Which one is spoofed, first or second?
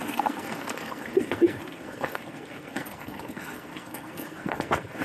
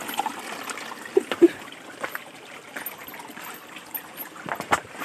first